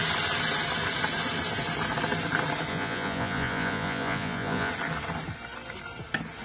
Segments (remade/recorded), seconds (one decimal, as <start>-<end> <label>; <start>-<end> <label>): 0.0-2.7 recorded; 2.7-4.7 remade; 4.7-6.4 recorded